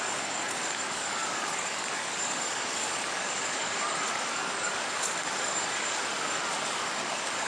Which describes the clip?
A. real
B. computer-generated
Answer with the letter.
B